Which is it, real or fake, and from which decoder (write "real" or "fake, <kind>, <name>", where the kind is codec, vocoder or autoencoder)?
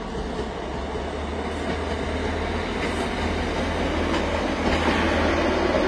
real